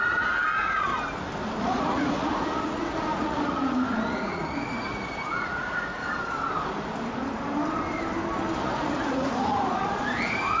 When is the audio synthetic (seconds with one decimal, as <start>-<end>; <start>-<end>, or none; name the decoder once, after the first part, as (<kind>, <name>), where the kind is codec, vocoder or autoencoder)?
0.0-0.9 (vocoder, Vocos); 1.6-6.0; 8.6-10.6